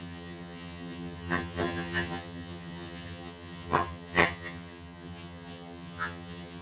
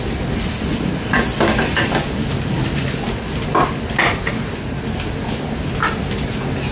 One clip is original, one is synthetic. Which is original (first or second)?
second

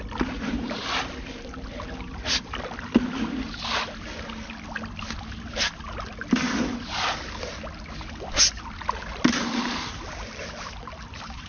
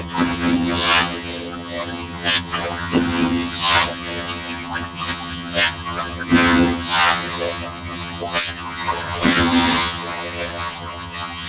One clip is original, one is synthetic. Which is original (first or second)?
first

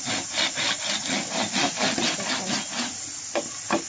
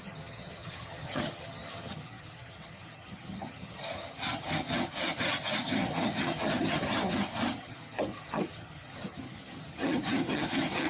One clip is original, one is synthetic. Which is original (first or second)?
first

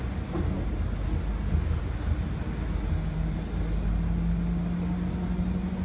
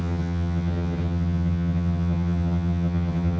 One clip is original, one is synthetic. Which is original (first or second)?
first